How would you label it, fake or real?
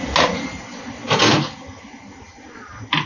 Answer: real